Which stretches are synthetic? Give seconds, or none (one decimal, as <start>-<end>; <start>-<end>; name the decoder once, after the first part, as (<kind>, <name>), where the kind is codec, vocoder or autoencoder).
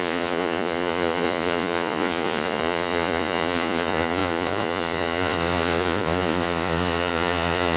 0.0-7.8 (vocoder, Vocos)